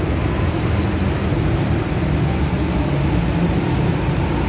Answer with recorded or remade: recorded